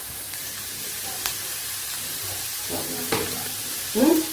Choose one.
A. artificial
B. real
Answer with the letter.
A